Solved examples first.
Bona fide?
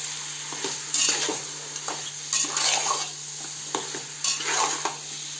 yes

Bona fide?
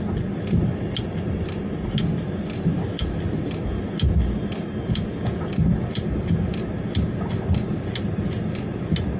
yes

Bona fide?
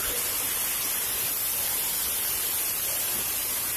yes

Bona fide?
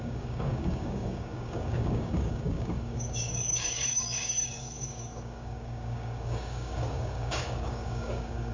no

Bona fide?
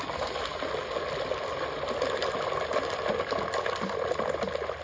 yes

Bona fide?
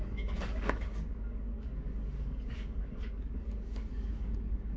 no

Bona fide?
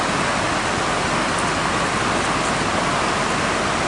yes